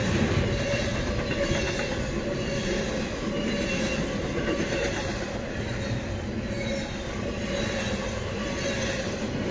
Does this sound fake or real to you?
real